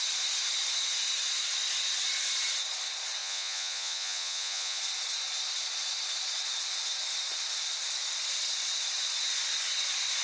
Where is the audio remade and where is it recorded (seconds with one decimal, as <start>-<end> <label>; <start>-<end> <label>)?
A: 0.0-3.2 recorded; 3.2-4.8 remade; 4.8-10.2 recorded